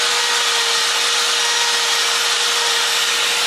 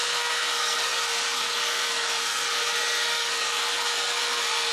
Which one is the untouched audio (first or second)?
first